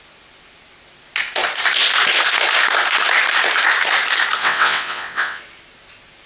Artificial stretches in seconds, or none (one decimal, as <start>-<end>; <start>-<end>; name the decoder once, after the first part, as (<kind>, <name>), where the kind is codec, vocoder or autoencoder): 4.4-5.4 (vocoder, WaveNeXt)